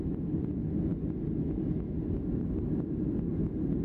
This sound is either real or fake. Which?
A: real